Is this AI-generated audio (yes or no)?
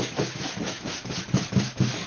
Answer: yes